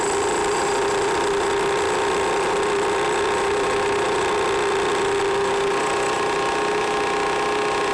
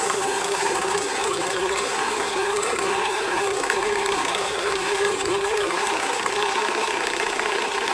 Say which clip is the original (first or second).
first